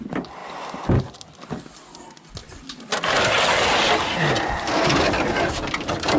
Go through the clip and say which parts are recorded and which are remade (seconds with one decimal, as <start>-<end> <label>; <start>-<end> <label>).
0.0-6.2 recorded